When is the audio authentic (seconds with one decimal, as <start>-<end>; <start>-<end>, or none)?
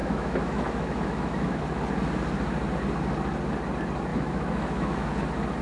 1.6-4.1; 5.1-5.6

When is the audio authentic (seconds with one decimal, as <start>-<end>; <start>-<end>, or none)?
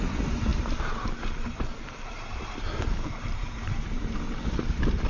0.0-3.3; 4.4-5.1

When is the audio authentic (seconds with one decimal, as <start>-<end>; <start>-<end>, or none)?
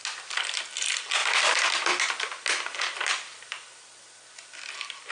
0.0-5.1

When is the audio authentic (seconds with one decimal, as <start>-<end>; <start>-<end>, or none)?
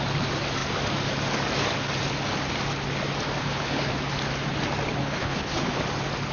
0.0-3.4; 3.9-5.0; 5.8-6.3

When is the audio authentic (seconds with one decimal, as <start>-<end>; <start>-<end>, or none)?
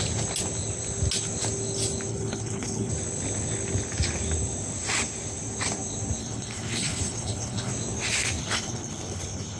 0.0-2.1; 2.9-6.2; 7.7-8.4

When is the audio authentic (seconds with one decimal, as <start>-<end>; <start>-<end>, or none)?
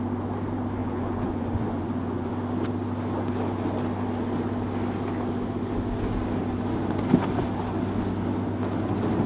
0.0-0.8; 2.3-9.3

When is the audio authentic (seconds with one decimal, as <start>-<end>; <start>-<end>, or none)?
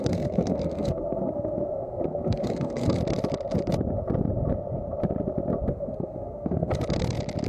3.0-5.7; 6.7-7.5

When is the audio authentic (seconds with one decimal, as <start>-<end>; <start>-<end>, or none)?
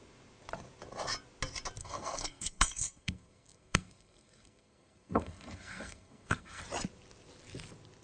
0.0-1.8; 6.6-8.0